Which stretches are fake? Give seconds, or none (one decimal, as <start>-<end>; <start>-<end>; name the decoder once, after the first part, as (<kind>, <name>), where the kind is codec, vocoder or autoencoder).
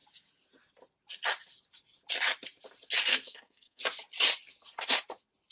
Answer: 3.1-3.8 (codec, SNAC)